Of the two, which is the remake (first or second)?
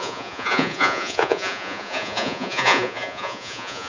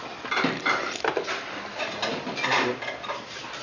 first